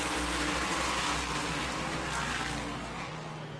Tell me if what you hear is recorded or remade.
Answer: recorded